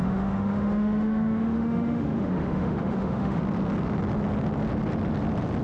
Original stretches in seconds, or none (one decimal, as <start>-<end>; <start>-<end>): 3.4-5.6